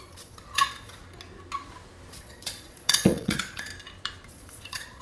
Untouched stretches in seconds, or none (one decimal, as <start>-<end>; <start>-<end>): 1.0-2.1; 3.7-4.3